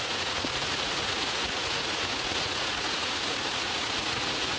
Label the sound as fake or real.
fake